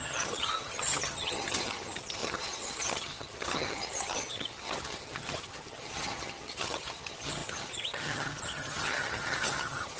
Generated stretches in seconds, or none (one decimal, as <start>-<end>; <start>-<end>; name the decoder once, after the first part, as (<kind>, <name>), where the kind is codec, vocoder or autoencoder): 0.0-10.0 (vocoder, HiFi-GAN)